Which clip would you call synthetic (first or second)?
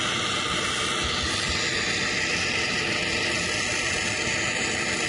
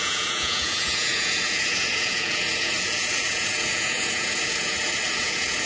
second